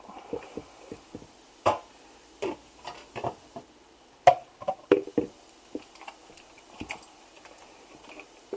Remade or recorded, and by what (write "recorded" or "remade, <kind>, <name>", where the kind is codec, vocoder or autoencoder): recorded